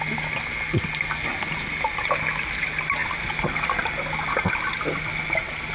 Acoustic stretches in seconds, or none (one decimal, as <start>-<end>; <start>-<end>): 0.0-5.7